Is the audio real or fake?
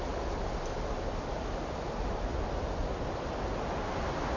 real